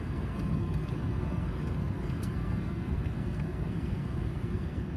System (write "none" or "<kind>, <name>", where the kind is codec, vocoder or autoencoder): codec, SNAC